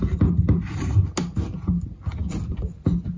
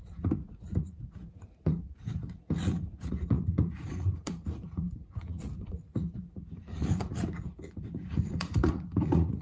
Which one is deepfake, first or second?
second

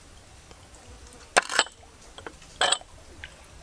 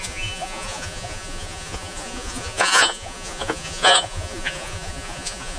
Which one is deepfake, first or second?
second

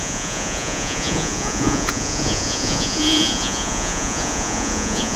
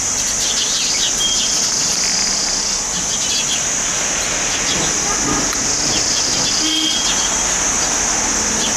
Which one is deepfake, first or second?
first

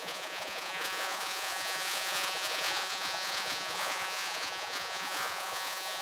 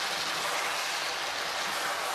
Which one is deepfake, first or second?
first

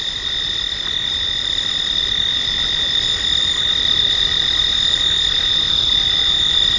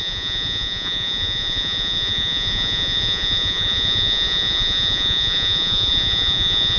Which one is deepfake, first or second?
second